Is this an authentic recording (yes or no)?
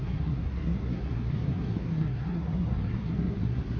no